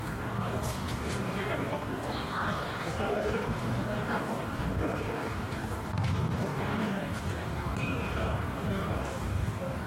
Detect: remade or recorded remade